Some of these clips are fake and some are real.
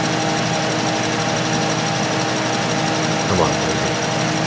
real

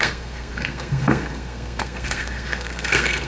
fake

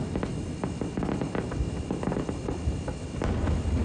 real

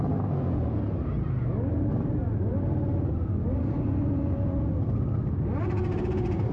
real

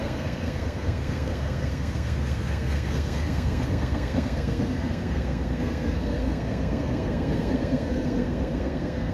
fake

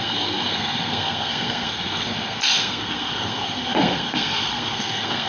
fake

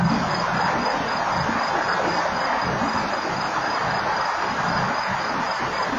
real